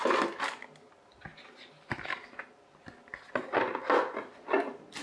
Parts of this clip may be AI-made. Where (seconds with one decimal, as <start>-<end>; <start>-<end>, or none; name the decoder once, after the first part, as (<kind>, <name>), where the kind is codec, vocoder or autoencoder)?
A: none